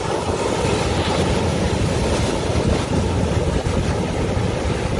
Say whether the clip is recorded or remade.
recorded